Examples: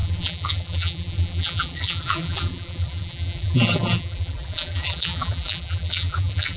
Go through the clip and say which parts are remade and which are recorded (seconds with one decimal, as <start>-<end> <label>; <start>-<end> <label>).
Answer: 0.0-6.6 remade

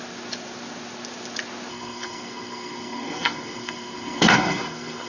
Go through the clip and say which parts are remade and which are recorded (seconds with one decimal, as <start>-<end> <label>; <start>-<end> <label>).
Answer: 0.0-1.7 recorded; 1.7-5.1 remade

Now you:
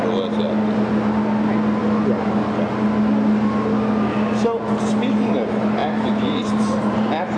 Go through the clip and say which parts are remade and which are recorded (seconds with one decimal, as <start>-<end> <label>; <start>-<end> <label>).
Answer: 0.0-5.8 recorded; 5.8-7.4 remade

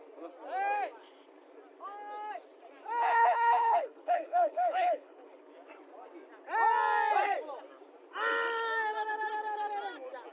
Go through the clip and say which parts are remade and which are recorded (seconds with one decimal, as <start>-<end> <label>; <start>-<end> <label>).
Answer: 0.0-3.0 recorded; 3.0-5.4 remade; 5.4-10.3 recorded

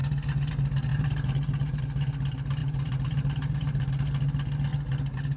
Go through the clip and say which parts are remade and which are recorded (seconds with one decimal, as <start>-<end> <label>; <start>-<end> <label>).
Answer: 0.0-0.9 recorded; 0.9-1.8 remade; 1.8-2.6 recorded; 2.6-4.1 remade; 4.1-5.4 recorded

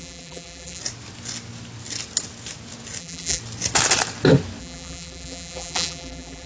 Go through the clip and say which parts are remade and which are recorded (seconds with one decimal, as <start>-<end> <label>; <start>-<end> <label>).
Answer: 0.0-0.8 remade; 0.8-3.0 recorded; 3.0-3.4 remade; 3.4-4.6 recorded; 4.6-6.5 remade

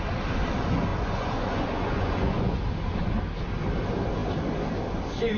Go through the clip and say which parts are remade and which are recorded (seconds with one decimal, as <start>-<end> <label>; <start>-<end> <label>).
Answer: 0.0-0.9 recorded; 0.9-2.6 remade; 2.6-5.4 recorded